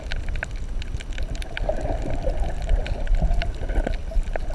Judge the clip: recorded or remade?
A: recorded